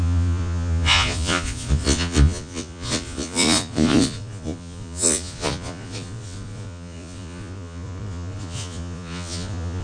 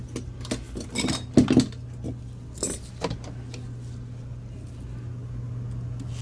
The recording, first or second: second